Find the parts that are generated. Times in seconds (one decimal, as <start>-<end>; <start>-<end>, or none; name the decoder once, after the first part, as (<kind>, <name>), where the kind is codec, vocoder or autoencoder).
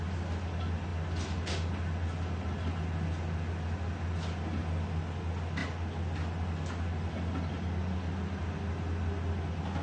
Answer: none